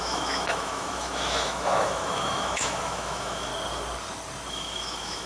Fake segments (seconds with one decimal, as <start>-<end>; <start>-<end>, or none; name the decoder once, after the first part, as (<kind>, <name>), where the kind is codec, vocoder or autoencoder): 0.0-3.5 (autoencoder, DAC-VAE); 4.5-5.3